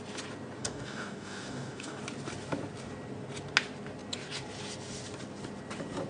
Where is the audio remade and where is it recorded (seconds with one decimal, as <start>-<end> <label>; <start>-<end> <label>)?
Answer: 0.0-0.6 recorded; 0.6-2.0 remade; 2.0-6.1 recorded